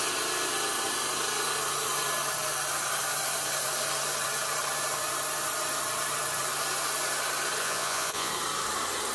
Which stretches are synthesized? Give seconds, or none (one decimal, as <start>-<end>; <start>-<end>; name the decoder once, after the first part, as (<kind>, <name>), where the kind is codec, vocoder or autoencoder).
7.6-8.3 (vocoder, Vocos)

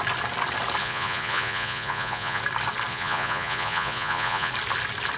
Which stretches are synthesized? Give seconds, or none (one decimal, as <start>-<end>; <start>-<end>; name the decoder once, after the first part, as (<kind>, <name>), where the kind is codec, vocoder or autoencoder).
0.8-2.4 (vocoder, Vocos); 2.9-4.5

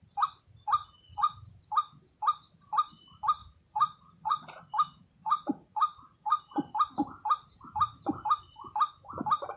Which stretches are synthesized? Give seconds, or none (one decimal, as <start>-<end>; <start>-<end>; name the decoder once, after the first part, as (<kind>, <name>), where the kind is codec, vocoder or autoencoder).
0.8-1.5 (vocoder, Vocos); 3.4-4.6; 5.2-6.4

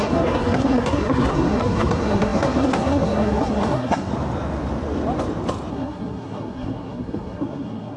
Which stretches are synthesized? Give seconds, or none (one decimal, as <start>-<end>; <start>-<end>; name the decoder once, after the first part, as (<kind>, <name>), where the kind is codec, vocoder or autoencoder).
0.0-4.1 (codec, SNAC); 5.7-8.0

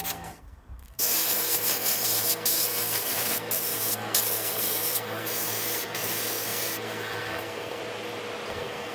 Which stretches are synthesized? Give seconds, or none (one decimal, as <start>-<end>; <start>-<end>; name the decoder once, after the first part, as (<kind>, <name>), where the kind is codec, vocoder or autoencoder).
0.0-7.8 (codec, SNAC); 8.5-8.9

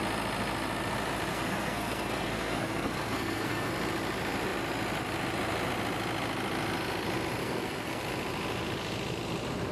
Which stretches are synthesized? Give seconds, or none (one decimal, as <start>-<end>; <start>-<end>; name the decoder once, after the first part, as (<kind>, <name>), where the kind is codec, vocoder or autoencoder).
1.3-3.7 (codec, SNAC); 7.4-8.0

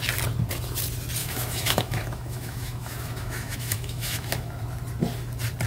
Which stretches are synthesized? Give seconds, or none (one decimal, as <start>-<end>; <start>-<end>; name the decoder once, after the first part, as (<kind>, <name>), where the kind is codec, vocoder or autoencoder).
1.2-4.6 (autoencoder, DAC-VAE)

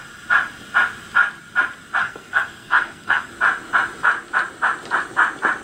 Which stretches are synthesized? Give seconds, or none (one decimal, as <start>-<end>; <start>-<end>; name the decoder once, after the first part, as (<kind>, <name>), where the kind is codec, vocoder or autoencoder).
2.0-3.3 (codec, SNAC)